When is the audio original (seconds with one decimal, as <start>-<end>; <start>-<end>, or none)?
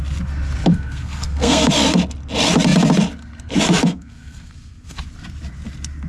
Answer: 0.0-0.7; 1.7-3.8; 5.0-6.1